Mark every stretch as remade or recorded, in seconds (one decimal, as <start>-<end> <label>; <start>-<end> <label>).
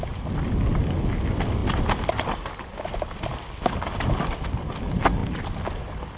0.0-6.2 recorded